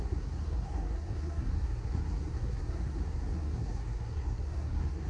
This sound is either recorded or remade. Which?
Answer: remade